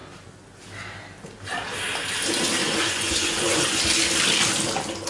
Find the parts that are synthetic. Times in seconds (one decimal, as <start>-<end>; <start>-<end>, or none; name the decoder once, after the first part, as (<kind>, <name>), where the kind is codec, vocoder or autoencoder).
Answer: 2.6-3.8 (vocoder, Vocos)